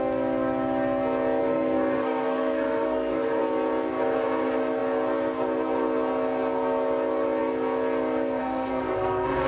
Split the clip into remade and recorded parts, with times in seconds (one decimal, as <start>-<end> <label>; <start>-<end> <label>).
0.0-1.4 recorded; 1.4-3.4 remade; 3.4-8.4 recorded; 8.4-9.5 remade